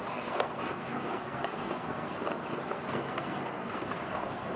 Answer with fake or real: fake